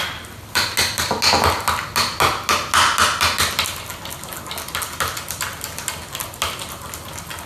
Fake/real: real